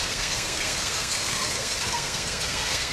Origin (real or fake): fake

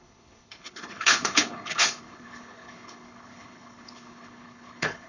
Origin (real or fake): fake